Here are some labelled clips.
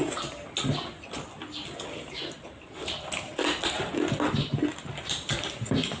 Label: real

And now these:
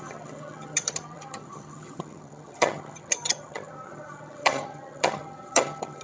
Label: fake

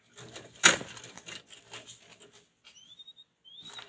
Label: real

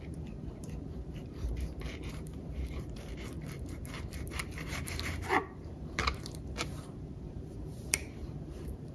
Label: fake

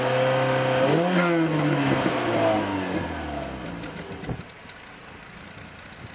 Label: real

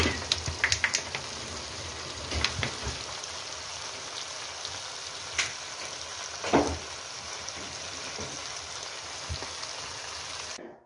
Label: real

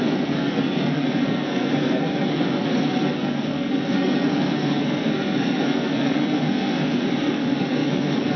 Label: fake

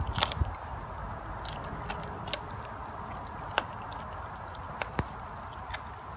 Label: real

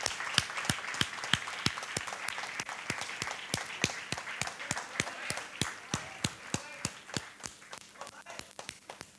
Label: real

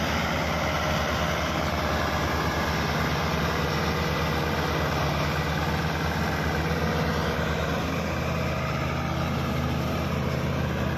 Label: real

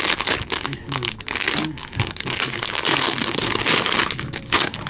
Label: fake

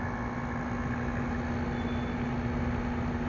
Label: real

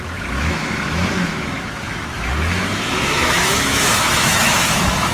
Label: fake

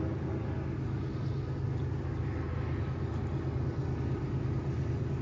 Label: real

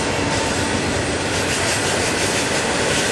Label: real